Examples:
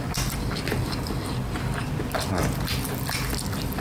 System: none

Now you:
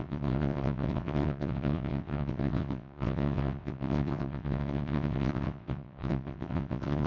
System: vocoder, WaveNeXt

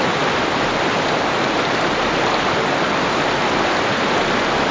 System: none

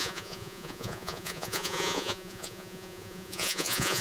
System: vocoder, Vocos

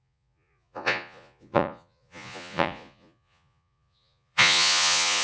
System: vocoder, Vocos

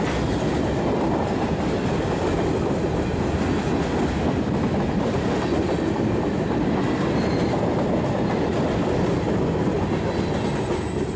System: none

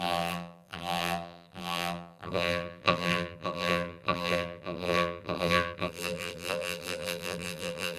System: vocoder, BigVGAN v2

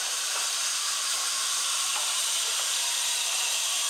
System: vocoder, BigVGAN v2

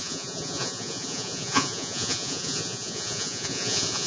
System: vocoder, Vocos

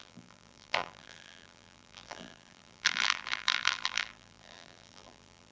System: vocoder, BigVGAN v2